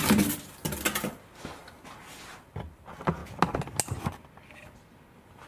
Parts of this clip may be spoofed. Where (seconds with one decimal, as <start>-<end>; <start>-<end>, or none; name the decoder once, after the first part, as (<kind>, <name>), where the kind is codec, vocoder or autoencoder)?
none